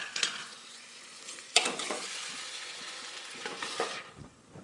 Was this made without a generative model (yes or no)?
no